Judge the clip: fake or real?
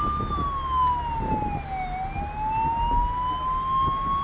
real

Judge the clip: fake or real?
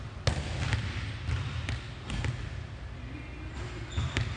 real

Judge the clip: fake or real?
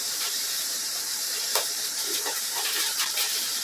fake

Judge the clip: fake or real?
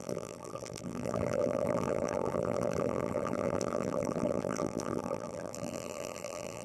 fake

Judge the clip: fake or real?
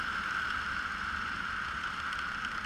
real